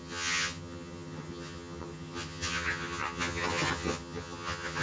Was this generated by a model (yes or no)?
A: yes